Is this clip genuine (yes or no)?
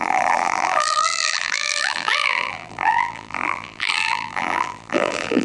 no